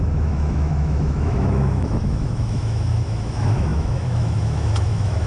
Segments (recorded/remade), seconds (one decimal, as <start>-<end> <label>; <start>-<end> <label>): 0.0-5.3 remade